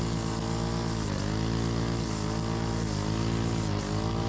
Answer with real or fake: real